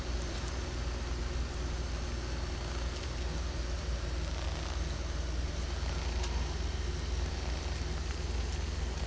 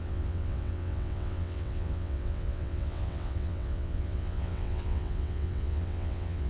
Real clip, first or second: first